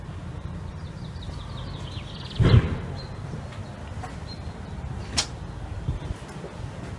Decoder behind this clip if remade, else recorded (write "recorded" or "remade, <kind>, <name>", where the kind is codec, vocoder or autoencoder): recorded